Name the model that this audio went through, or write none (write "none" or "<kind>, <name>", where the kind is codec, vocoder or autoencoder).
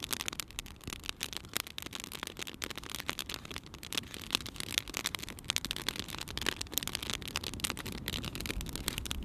none